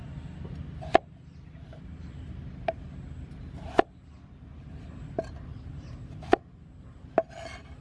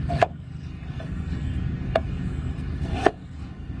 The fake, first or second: second